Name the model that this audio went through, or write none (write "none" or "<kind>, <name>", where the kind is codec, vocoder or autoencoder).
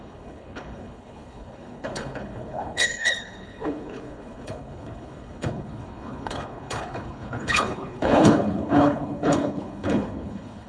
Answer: codec, HILCodec